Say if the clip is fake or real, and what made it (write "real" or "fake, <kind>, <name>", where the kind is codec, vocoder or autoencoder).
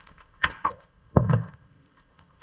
fake, codec, ZipCodec